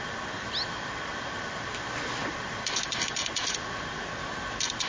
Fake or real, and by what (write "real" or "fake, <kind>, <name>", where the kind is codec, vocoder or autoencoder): real